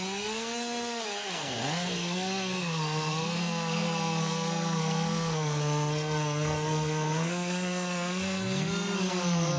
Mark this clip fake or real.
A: fake